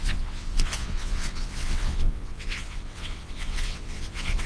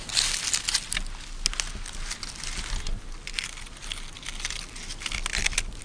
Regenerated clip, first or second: first